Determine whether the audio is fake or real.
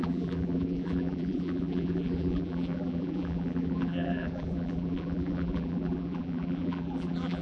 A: fake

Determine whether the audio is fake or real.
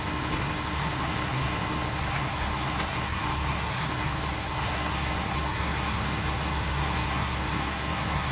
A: fake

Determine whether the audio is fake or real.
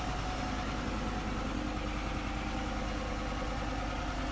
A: real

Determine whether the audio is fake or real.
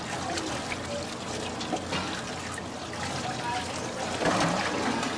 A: real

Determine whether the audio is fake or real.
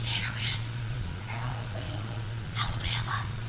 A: fake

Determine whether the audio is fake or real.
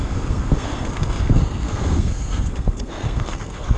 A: fake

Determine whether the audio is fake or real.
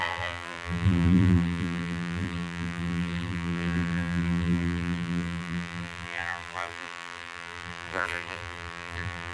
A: fake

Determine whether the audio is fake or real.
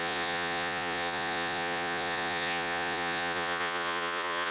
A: fake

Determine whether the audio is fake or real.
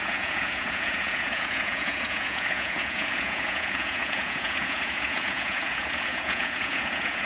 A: fake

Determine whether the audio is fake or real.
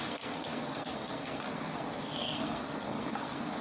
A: fake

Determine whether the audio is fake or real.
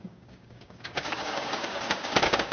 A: fake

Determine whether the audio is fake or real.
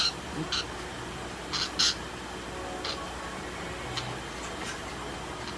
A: real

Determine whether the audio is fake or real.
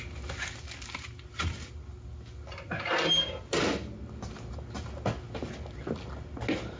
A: real